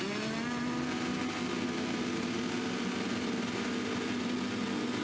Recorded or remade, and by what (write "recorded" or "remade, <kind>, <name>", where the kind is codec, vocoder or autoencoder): recorded